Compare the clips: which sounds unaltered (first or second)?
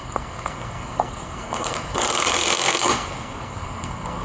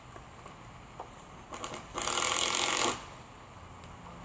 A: second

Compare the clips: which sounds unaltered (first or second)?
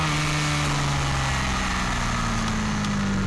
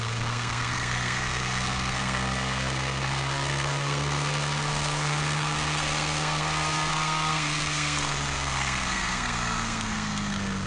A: first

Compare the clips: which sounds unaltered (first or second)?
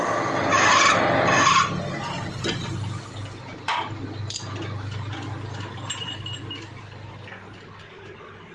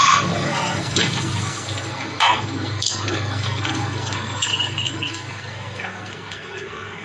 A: first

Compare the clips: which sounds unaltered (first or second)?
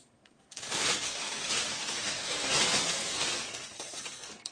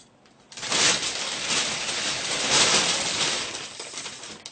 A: second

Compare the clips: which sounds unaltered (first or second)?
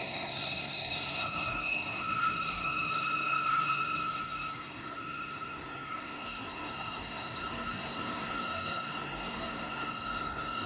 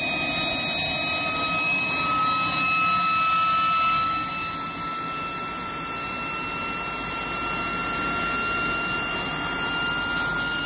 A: second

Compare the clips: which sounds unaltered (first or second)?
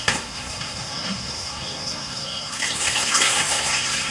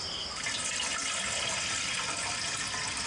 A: second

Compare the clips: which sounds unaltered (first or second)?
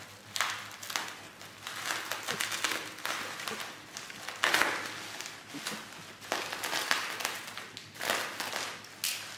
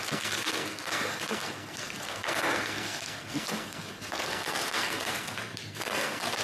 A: first